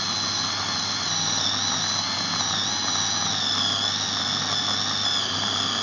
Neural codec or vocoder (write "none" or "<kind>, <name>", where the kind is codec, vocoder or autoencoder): none